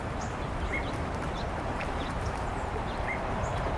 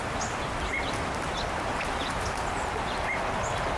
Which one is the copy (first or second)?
first